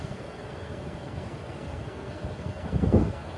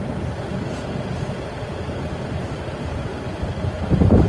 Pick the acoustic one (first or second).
second